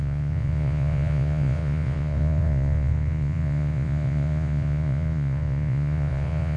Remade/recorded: remade